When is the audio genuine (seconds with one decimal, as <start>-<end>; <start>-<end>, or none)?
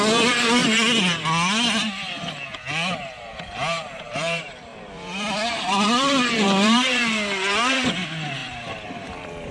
0.6-3.2